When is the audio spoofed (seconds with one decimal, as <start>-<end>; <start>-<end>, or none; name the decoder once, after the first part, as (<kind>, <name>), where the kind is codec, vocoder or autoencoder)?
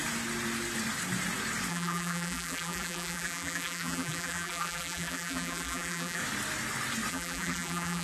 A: 1.7-6.2 (vocoder, BigVGAN v2); 7.1-8.0